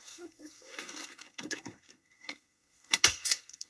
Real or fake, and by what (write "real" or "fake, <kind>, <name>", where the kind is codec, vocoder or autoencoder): fake, codec, SNAC